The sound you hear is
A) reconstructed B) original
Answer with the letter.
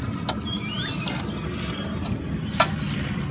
B